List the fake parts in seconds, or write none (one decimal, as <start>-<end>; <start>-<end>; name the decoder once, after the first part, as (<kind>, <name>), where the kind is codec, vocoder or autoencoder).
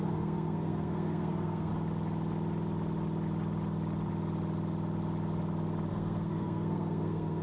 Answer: 0.0-1.7 (codec, SNAC); 5.9-7.4